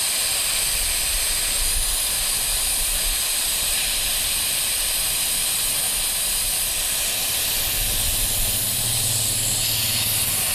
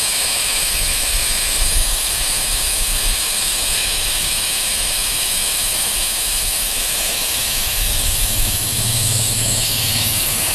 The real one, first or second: first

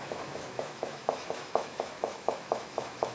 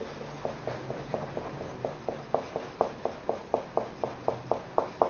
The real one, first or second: second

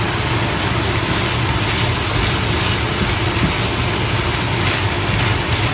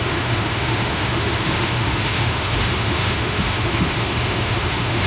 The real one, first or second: first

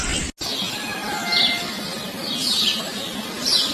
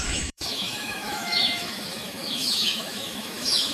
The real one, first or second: first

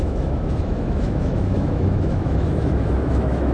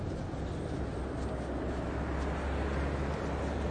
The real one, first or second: second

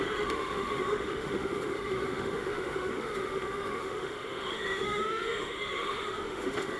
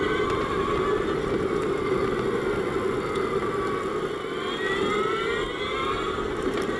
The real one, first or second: second